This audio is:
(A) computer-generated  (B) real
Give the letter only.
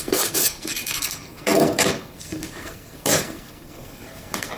A